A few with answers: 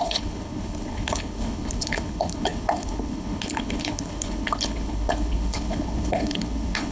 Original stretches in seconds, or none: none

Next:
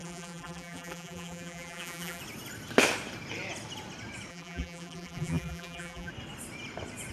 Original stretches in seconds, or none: 2.2-4.3; 6.1-7.1

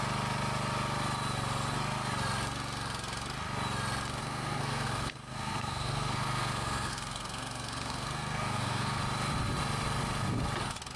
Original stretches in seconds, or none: 0.0-4.2; 9.0-11.0

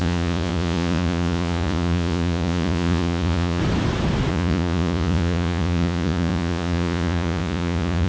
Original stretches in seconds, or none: 3.6-4.3

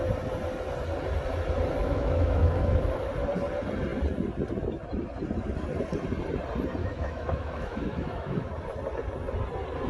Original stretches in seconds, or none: 0.0-1.8; 3.1-6.8; 8.5-9.9

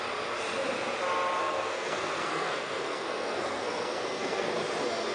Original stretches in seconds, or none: 0.0-1.4; 4.5-5.1